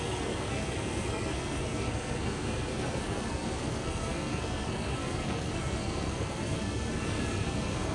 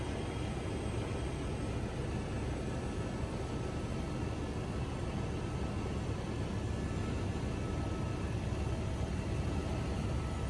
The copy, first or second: first